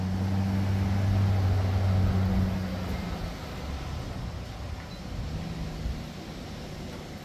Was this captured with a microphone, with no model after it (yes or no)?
yes